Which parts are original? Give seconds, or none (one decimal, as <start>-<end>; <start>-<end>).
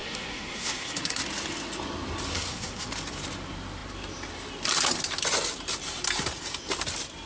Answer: 1.2-2.3; 2.9-7.3